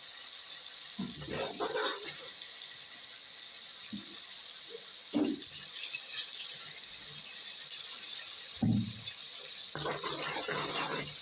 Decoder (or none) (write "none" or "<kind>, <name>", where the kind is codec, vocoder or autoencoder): none